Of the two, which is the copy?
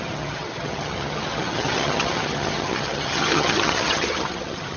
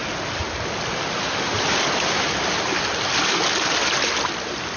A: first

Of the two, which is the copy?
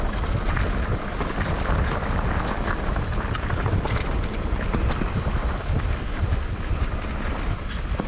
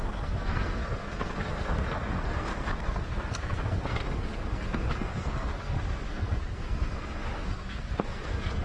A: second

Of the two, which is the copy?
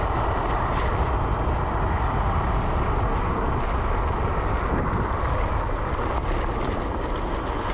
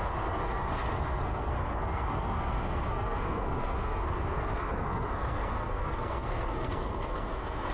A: second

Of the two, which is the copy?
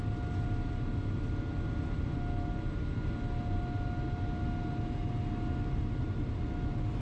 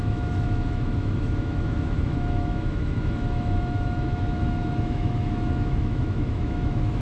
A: second